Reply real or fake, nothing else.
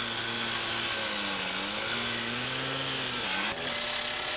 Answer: real